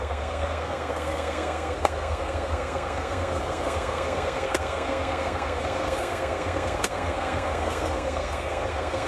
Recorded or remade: remade